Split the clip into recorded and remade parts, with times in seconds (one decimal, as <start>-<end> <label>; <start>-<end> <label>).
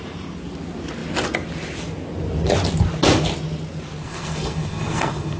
0.0-4.0 recorded; 4.0-5.4 remade